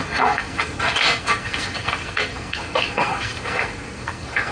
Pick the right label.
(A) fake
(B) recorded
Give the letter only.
A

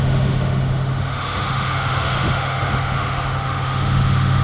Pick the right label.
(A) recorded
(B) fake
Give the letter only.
B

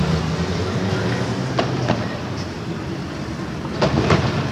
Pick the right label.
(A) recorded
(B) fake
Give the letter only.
B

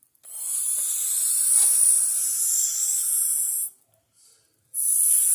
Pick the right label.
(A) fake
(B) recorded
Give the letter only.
B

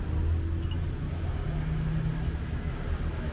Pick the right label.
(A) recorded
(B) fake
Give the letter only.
A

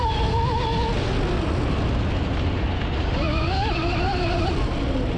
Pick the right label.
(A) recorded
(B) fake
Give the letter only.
A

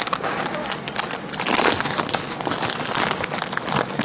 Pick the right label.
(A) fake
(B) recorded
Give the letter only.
B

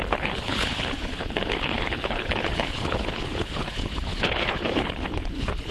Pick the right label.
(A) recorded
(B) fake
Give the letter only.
B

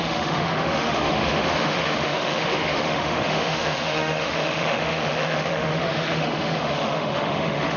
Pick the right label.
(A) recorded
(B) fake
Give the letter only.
B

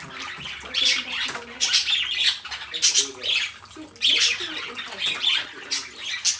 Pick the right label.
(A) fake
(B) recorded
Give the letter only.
B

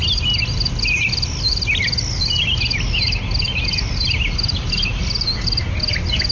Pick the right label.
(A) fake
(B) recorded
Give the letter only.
B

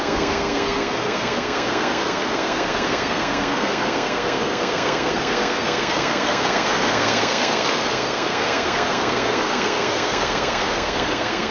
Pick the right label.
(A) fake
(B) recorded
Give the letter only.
A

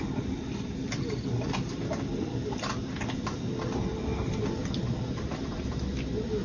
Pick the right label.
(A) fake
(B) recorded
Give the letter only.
B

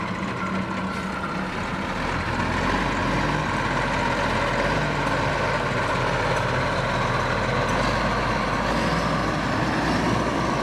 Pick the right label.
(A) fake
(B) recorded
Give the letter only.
B